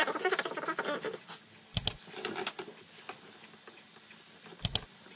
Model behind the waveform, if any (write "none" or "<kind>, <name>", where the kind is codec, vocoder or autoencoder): none